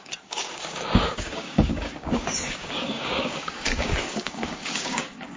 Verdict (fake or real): fake